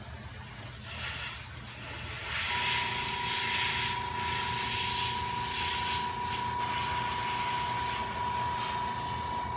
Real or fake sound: real